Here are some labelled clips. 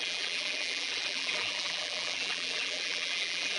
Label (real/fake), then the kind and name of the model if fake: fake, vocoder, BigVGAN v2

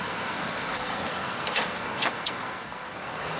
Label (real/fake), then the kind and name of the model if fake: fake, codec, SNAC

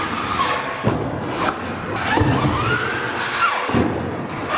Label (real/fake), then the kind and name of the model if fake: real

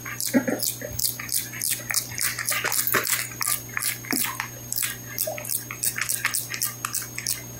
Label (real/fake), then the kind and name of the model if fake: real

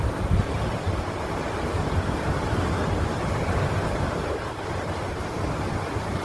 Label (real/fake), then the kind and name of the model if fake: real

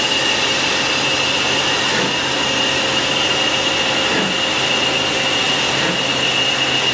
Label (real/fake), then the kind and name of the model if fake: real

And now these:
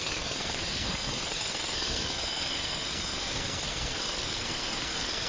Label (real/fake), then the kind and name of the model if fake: fake, codec, SNAC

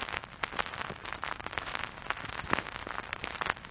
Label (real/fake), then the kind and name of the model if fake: real